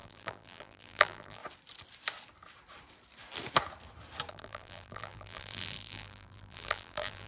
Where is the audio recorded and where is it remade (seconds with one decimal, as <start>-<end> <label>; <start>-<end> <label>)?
0.0-1.4 remade; 1.4-4.3 recorded; 4.3-7.3 remade